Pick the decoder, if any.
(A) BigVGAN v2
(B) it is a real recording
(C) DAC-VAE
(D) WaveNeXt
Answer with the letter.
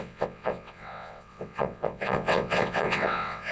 D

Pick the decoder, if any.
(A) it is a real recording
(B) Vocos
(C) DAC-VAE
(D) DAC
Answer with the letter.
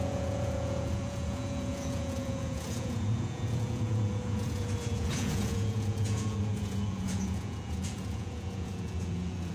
B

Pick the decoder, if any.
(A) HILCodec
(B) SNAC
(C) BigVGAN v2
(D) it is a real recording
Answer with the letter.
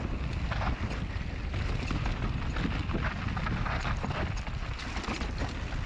D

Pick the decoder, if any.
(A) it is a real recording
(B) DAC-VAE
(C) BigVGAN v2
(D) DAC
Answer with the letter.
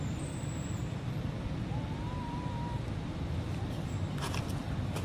C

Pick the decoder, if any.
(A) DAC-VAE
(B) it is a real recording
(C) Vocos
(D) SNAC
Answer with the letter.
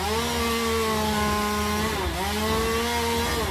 B